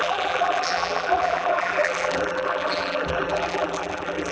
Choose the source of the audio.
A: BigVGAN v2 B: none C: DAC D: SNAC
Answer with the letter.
A